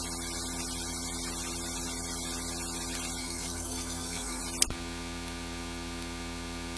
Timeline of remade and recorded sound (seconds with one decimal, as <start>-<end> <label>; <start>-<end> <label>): 0.0-3.2 recorded; 3.2-4.4 remade; 4.4-6.8 recorded